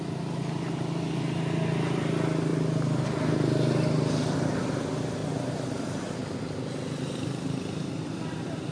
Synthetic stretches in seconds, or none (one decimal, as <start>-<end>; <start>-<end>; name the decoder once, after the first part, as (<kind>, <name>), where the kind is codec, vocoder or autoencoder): none